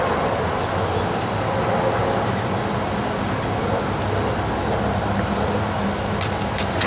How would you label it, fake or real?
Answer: real